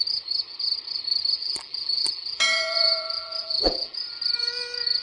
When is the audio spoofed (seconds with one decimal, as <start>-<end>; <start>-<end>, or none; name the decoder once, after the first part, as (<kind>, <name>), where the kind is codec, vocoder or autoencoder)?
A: 1.4-4.0 (vocoder, BigVGAN v2)